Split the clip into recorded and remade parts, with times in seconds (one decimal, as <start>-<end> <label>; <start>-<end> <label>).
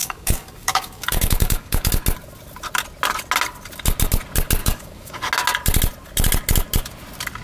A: 0.0-1.9 remade; 1.9-4.6 recorded; 4.6-5.3 remade; 5.3-7.4 recorded